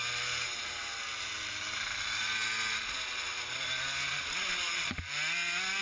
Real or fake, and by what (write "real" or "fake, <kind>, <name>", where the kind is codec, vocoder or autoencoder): real